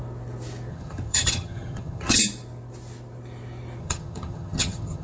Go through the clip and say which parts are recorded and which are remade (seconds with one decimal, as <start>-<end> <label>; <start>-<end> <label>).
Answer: 0.0-0.7 recorded; 0.7-2.2 remade; 2.2-3.8 recorded; 3.8-5.0 remade